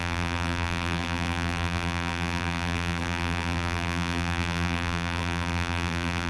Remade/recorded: remade